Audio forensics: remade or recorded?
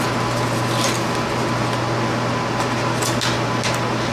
recorded